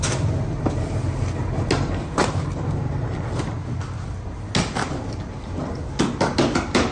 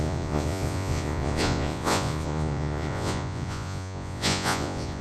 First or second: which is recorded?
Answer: first